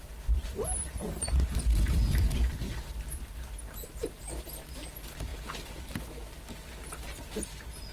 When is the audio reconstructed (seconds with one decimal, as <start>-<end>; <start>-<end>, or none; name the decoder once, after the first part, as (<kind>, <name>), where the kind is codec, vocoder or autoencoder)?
none